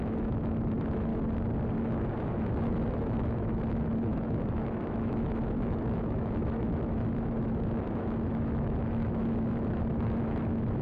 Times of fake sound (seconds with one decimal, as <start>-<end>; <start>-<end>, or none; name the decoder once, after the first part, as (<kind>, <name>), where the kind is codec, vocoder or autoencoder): 0.0-1.1 (autoencoder, DAC-VAE); 1.8-10.8